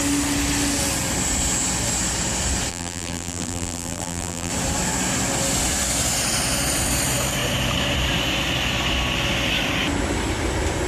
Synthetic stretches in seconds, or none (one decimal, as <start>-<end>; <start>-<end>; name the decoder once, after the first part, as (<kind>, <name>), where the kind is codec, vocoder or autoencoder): 2.7-4.5 (vocoder, BigVGAN v2)